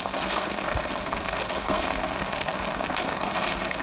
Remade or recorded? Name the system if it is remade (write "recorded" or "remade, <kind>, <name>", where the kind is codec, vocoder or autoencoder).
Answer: remade, codec, SNAC